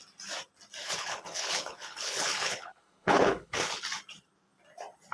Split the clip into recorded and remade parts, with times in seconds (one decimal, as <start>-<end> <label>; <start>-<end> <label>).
0.0-0.8 recorded; 0.8-3.8 remade; 3.8-5.1 recorded